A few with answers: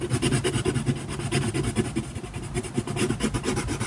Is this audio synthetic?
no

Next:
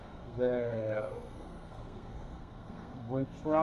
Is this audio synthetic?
yes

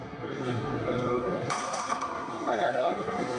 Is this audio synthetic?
yes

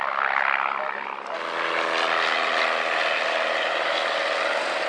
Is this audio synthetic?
no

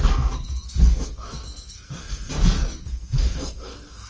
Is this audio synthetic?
yes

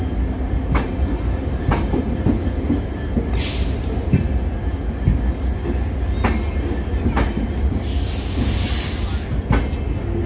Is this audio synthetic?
no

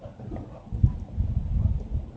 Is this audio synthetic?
no